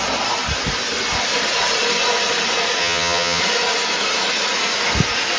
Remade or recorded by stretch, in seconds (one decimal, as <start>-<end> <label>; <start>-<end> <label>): 0.0-2.8 recorded; 2.8-3.4 remade; 3.4-5.4 recorded